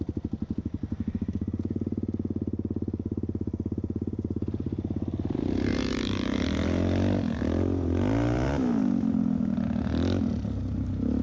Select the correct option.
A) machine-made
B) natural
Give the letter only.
B